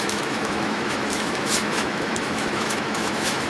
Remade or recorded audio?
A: remade